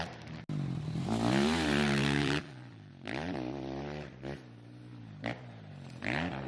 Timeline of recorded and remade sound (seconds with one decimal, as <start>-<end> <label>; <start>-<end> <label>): 0.0-2.2 recorded; 2.2-2.9 remade; 2.9-6.5 recorded